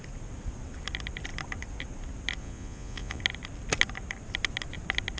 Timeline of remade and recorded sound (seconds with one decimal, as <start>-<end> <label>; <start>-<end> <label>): 0.0-2.4 recorded; 2.4-3.2 remade; 3.2-5.2 recorded